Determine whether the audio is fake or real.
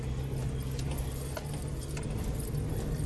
real